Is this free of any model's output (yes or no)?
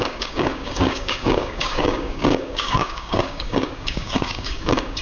no